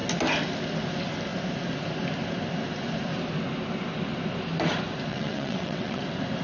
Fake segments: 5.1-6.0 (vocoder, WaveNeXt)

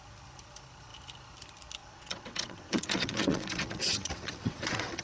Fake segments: 1.8-5.0 (vocoder, WaveNeXt)

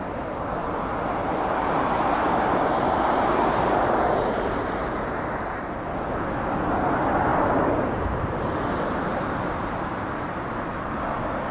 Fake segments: 0.6-5.1 (vocoder, BigVGAN v2); 7.3-8.5; 9.1-10.1

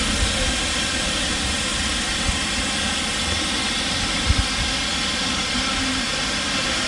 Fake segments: 1.7-5.7 (vocoder, BigVGAN v2)

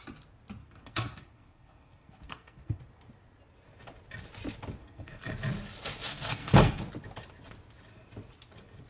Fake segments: 0.6-2.8 (codec, SNAC); 4.8-5.3; 6.1-6.8

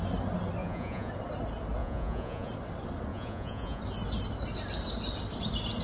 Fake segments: 0.6-1.1 (vocoder, Vocos); 1.8-2.5; 3.1-3.8

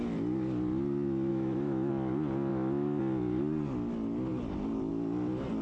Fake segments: 1.3-1.9 (autoencoder, DAC-VAE); 2.5-3.0

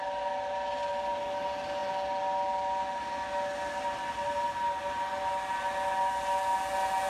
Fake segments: none